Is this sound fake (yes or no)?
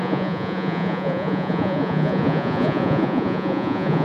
yes